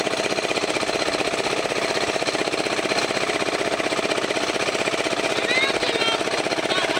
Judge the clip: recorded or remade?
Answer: recorded